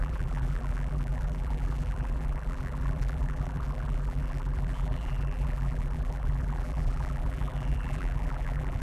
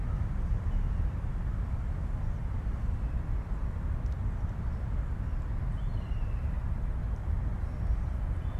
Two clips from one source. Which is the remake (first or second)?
first